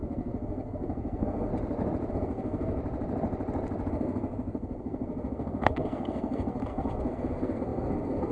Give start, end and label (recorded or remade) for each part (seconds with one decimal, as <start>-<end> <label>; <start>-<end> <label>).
0.0-1.5 remade; 1.5-2.1 recorded; 2.1-2.8 remade; 2.8-3.9 recorded; 3.9-8.3 remade

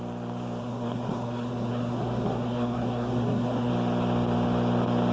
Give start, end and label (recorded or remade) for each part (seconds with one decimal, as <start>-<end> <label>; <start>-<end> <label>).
0.0-0.6 recorded; 0.6-3.7 remade; 3.7-5.1 recorded